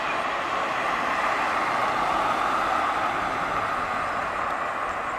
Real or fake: real